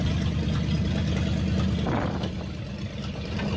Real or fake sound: real